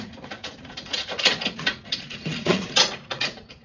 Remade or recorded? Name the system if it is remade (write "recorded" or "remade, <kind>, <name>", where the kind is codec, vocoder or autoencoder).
remade, vocoder, Vocos